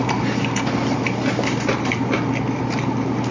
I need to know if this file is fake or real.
real